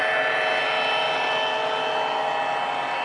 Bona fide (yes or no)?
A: yes